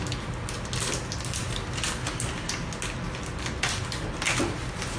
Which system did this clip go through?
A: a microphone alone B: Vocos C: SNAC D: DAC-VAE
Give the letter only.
A